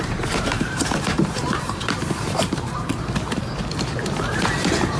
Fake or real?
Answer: fake